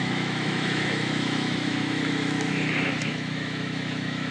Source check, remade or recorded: remade